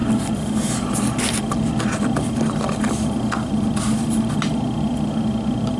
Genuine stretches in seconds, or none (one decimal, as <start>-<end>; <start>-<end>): 0.0-5.8